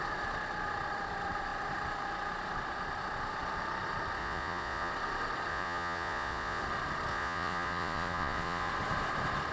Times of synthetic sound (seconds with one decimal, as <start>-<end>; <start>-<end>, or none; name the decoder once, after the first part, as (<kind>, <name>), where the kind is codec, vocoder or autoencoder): 4.2-4.9 (vocoder, Vocos); 5.5-6.6; 7.1-8.7